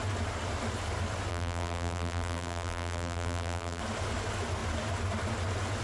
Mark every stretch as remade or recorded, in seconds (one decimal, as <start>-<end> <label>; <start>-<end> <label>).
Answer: 0.0-1.3 recorded; 1.3-3.8 remade; 3.8-5.8 recorded